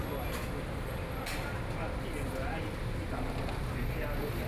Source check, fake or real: real